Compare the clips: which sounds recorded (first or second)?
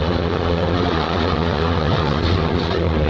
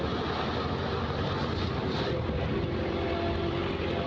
second